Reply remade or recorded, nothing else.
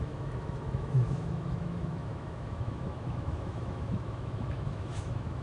remade